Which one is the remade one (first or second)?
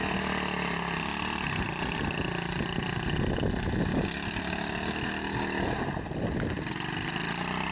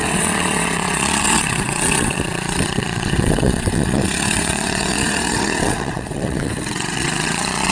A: second